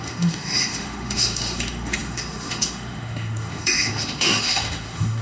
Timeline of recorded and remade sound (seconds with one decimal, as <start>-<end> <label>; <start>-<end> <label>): 0.0-5.2 remade